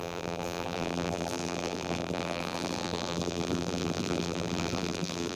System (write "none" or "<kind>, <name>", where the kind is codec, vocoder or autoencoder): vocoder, BigVGAN v2